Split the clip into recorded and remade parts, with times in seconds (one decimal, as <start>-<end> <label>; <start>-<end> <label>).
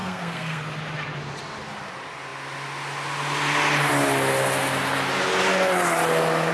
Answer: 0.0-0.6 remade; 0.6-6.5 recorded